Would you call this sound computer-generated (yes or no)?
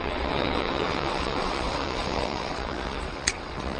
yes